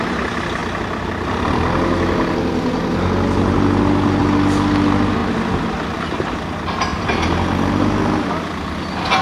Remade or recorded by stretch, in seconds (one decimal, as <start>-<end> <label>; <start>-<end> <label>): 0.0-6.9 recorded; 6.9-7.8 remade; 7.8-9.2 recorded